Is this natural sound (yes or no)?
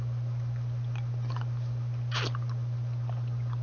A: yes